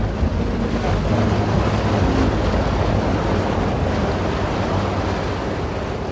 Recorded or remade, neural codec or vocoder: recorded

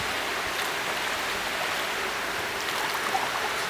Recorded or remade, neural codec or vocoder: recorded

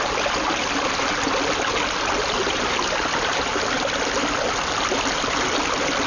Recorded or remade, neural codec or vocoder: recorded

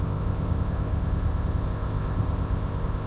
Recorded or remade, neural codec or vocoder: remade, codec, ZipCodec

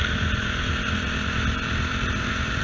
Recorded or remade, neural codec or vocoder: recorded